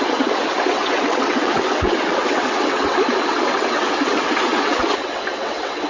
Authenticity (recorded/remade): remade